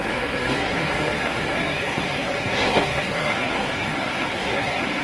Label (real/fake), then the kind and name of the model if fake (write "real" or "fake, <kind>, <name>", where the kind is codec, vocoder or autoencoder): fake, codec, SNAC